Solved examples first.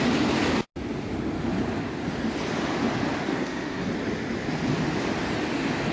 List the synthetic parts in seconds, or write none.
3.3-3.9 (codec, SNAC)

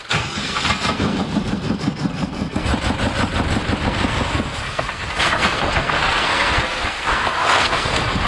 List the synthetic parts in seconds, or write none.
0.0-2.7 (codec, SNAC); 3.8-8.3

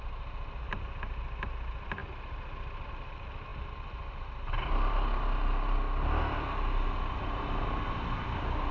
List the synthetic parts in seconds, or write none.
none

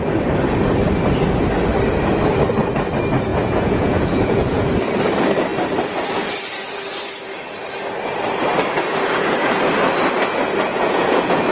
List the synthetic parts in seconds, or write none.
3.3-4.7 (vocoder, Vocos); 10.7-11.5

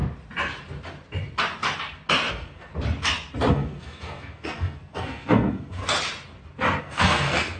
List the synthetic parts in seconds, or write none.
2.3-2.7 (codec, SNAC); 3.5-5.8; 6.8-7.6

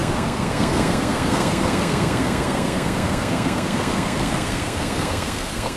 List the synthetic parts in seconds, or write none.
0.0-5.8 (codec, SNAC)